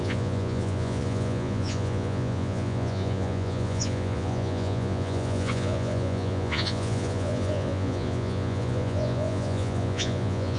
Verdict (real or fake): fake